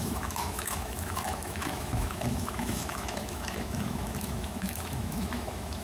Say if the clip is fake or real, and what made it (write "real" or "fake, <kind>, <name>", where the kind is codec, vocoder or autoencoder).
fake, autoencoder, DAC-VAE